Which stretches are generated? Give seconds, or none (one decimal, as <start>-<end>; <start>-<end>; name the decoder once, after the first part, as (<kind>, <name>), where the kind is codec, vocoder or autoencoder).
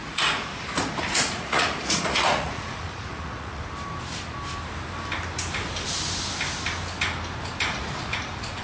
0.0-0.5 (vocoder, Vocos); 1.0-3.6; 7.7-8.6